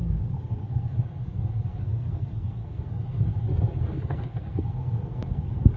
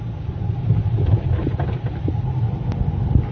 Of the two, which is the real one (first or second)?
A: second